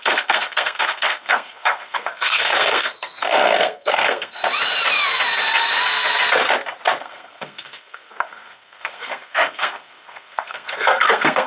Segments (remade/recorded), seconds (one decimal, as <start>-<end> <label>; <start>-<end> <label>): 0.0-4.4 remade; 4.4-7.0 recorded; 7.0-11.5 remade